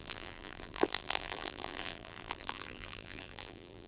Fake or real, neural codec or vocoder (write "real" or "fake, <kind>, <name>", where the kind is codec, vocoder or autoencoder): fake, vocoder, BigVGAN v2